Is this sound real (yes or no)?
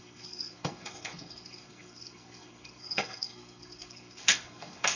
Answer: no